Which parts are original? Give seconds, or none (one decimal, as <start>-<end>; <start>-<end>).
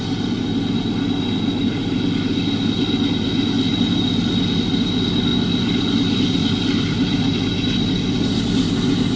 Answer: 0.0-3.7; 4.7-5.3; 8.7-9.2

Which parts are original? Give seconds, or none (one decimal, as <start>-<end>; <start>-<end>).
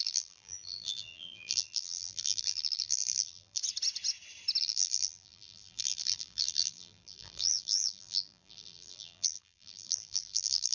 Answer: 3.6-4.6